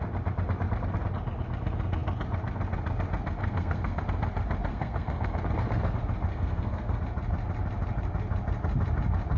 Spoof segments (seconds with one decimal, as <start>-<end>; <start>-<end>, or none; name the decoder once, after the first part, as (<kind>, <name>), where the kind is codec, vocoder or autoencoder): 3.4-4.0 (codec, SNAC); 4.7-5.4; 6.3-7.0